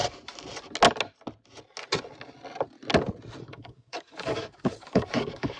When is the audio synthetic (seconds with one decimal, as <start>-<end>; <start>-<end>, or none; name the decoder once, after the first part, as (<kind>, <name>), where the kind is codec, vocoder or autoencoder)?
3.4-5.6 (codec, DAC)

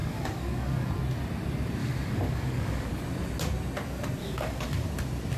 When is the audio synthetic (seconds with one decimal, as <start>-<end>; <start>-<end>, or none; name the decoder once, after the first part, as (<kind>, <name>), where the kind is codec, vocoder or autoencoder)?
0.0-0.9 (codec, DAC); 1.8-2.9; 4.2-4.9